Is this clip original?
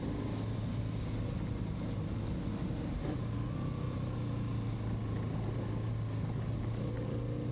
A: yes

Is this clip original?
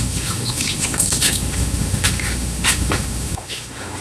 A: no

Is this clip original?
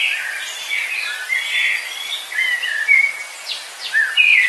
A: yes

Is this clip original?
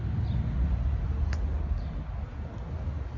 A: yes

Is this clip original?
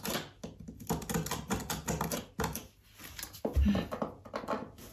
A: yes